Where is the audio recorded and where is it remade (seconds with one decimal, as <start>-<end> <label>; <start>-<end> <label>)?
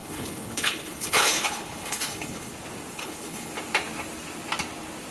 0.0-2.5 remade; 2.5-2.9 recorded; 2.9-3.5 remade; 3.5-5.1 recorded